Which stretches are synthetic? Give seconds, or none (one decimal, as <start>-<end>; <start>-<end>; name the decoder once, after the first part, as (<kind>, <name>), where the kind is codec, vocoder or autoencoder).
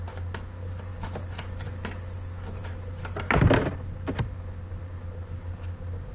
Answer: none